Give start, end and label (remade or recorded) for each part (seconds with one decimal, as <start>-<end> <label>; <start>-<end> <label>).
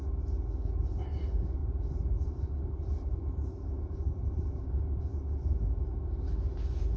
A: 0.0-1.6 recorded; 1.6-5.0 remade; 5.0-7.0 recorded